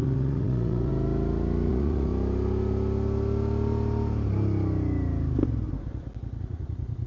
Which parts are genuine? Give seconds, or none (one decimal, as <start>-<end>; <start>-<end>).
0.9-1.7; 2.1-6.4